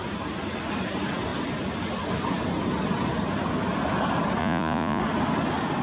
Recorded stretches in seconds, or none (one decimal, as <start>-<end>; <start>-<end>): 0.0-4.4; 5.0-5.8